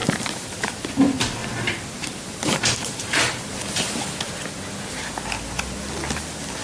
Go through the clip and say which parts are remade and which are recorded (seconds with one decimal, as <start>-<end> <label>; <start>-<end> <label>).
0.0-0.9 remade; 0.9-1.4 recorded; 1.4-3.9 remade; 3.9-6.6 recorded